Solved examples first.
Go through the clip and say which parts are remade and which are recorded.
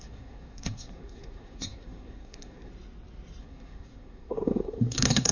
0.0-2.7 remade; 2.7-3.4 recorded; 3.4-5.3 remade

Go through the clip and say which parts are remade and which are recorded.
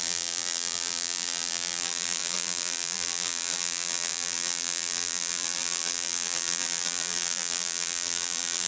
0.0-8.7 remade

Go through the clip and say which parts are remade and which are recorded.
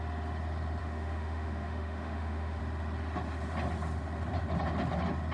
0.0-0.8 recorded; 0.8-2.6 remade; 2.6-5.3 recorded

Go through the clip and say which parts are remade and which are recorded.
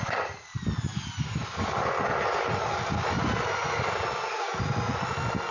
0.0-5.5 recorded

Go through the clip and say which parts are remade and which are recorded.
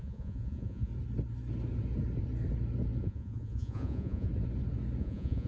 0.0-0.9 remade; 0.9-3.0 recorded; 3.0-4.3 remade; 4.3-5.0 recorded; 5.0-5.5 remade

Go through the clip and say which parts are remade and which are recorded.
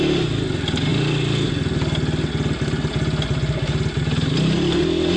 0.0-5.2 recorded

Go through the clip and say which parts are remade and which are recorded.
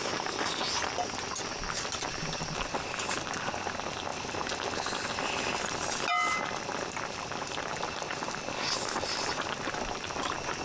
0.0-10.6 recorded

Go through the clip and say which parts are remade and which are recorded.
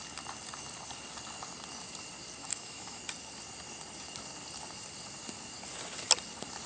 0.0-2.4 recorded; 2.4-3.0 remade; 3.0-6.7 recorded